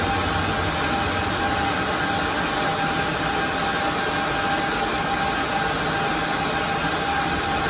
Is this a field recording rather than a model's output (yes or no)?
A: yes